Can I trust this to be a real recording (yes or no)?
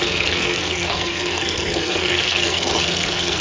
no